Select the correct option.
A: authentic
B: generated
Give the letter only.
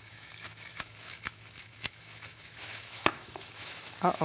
B